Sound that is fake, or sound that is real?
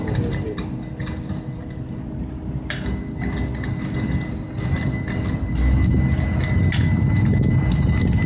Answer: real